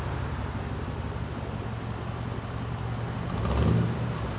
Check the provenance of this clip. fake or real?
real